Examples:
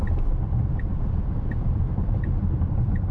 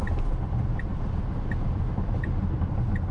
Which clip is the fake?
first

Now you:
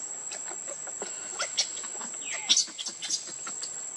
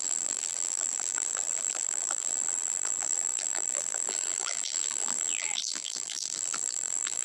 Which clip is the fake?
second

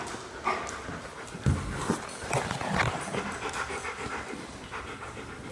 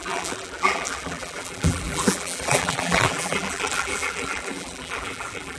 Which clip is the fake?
second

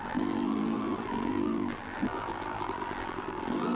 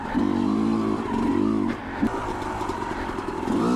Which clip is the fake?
first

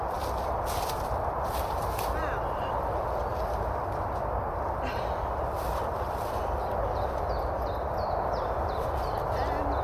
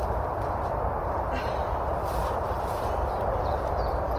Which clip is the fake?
second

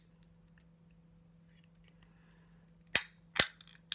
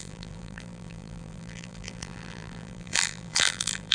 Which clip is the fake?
second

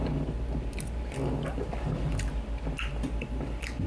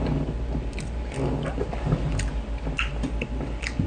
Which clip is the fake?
first